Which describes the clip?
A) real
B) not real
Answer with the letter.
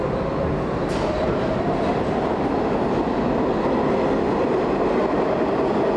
A